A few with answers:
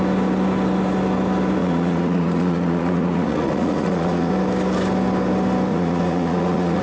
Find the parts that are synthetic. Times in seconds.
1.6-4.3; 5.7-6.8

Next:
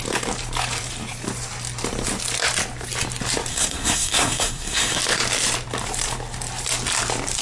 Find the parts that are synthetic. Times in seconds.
3.5-5.0

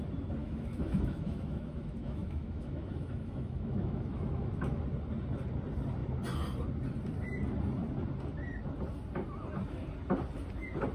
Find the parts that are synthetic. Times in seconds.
0.4-4.8

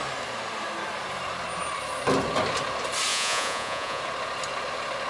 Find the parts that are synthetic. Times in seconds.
3.1-4.0

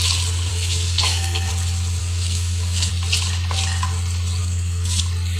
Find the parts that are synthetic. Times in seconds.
0.5-1.5; 2.0-2.9; 4.4-5.0

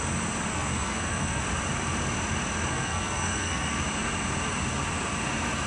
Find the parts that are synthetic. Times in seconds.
0.5-1.4; 2.7-3.8